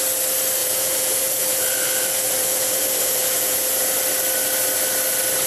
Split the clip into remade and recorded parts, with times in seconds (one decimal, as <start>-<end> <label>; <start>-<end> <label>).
0.0-0.6 recorded; 0.6-3.9 remade; 3.9-5.5 recorded